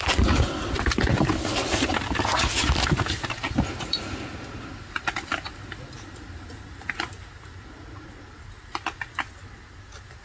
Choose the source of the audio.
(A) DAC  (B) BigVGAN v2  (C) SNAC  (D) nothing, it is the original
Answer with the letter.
D